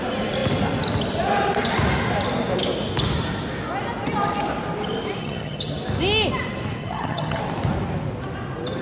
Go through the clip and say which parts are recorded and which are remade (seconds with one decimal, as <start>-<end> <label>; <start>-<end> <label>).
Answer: 0.0-5.2 recorded; 5.2-5.8 remade; 5.8-6.8 recorded; 6.8-7.4 remade; 7.4-8.8 recorded